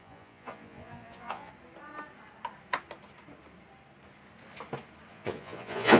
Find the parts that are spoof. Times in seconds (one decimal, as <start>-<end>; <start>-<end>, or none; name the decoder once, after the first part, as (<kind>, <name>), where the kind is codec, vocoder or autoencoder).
0.0-1.5 (vocoder, Vocos); 5.1-6.0